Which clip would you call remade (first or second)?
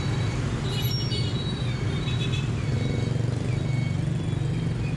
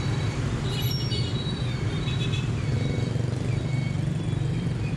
second